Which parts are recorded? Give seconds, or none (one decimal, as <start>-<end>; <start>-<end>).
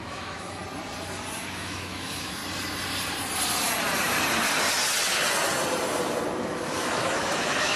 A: 0.6-1.4; 2.4-6.4